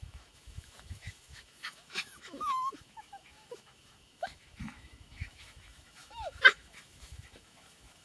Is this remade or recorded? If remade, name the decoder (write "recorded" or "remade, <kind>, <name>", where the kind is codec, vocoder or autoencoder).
remade, autoencoder, DAC-VAE